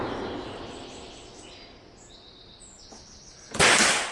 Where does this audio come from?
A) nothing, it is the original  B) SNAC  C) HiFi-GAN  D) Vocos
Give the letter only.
A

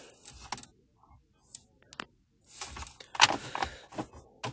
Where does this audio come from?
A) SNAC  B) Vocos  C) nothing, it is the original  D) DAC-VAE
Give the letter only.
C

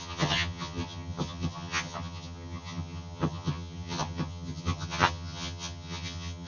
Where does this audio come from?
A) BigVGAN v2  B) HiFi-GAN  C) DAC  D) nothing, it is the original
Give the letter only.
B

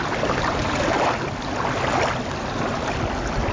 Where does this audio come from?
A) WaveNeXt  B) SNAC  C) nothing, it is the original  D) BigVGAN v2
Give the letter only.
C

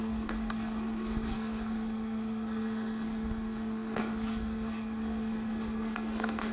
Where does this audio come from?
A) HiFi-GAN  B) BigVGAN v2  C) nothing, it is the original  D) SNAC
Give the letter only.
D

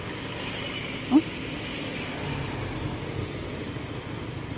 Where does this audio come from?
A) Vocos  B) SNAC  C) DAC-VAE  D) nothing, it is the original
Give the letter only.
D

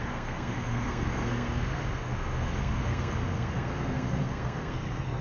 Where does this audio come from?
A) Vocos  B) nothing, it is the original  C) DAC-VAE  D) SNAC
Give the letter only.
D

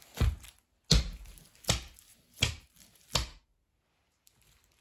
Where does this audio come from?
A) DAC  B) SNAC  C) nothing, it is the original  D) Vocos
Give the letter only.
C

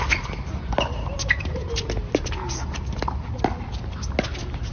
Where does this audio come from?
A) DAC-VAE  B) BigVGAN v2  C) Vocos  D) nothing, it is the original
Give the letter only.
D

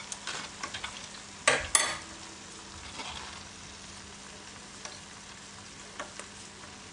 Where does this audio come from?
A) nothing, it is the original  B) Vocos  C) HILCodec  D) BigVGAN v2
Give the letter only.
A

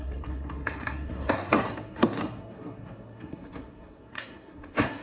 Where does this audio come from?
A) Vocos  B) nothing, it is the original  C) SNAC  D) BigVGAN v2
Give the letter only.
C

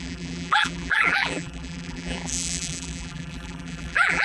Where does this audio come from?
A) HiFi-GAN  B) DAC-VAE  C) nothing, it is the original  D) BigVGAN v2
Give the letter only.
D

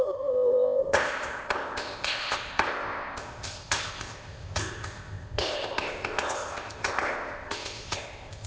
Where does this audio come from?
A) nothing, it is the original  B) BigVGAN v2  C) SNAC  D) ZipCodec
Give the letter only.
D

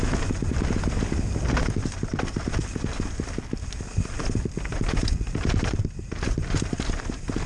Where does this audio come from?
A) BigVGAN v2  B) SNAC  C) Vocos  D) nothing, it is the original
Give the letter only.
D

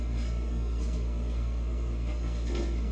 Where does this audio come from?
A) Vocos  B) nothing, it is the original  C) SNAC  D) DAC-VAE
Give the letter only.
C